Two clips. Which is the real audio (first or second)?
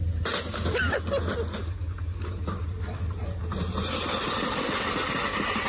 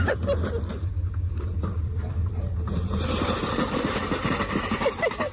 first